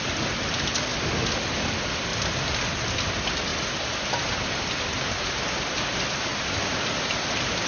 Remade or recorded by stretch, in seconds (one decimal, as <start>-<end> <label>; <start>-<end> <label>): 0.0-7.7 recorded